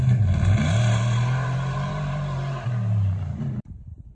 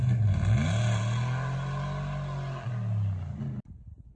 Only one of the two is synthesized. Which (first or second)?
first